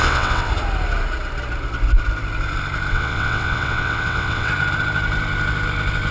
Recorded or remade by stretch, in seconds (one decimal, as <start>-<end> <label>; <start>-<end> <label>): 0.0-0.5 remade; 0.5-2.9 recorded; 2.9-4.5 remade; 4.5-6.1 recorded